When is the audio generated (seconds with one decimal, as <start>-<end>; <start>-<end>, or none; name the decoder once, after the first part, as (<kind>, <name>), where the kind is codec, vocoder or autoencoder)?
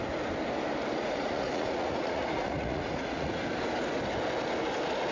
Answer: 1.0-3.4 (vocoder, Vocos)